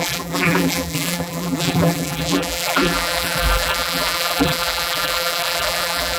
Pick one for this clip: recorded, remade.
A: remade